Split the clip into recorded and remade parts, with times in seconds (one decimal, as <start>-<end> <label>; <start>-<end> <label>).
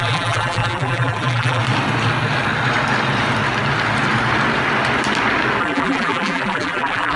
0.0-1.6 remade; 1.6-5.6 recorded; 5.6-7.2 remade